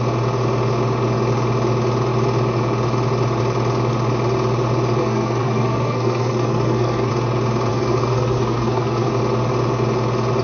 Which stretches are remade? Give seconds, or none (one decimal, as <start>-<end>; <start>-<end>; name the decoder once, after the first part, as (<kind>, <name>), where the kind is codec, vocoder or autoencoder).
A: 5.0-7.1 (codec, SNAC); 7.7-9.1